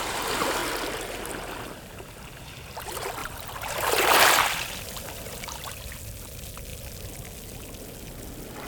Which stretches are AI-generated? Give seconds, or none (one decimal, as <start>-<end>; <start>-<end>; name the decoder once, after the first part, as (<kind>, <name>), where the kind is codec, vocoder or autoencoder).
3.2-6.0 (vocoder, BigVGAN v2)